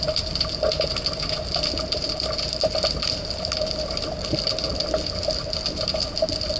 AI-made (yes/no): no